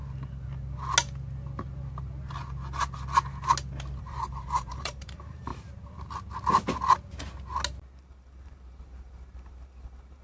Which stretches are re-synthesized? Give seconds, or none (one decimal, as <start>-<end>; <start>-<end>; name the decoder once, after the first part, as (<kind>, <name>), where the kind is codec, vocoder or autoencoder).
4.0-5.5 (vocoder, BigVGAN v2); 8.0-10.2